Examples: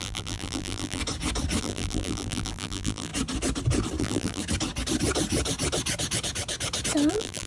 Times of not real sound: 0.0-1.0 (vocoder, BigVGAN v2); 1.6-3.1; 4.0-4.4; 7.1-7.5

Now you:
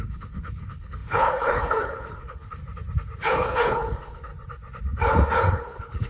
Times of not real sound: 0.0-2.6 (codec, HILCodec); 3.2-4.3; 5.5-6.1

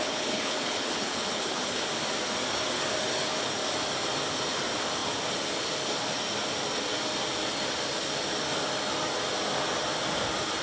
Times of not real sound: 0.0-1.9 (codec, HILCodec)